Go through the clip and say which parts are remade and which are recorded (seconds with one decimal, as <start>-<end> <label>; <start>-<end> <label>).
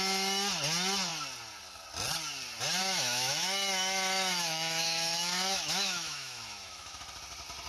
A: 0.0-2.8 recorded; 2.8-7.0 remade; 7.0-7.7 recorded